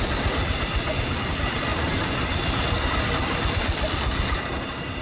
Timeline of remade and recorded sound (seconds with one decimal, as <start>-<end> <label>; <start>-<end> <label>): 0.0-5.0 recorded